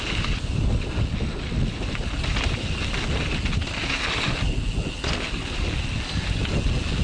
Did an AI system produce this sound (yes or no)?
no